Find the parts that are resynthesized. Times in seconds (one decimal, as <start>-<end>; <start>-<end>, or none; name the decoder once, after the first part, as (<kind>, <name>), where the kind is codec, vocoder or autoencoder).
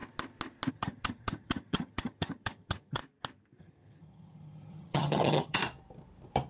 0.7-3.0 (vocoder, HiFi-GAN); 3.6-5.6